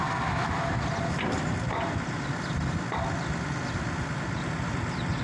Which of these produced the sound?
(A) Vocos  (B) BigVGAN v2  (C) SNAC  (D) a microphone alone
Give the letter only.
D